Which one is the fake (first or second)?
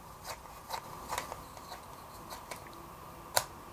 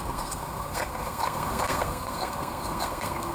second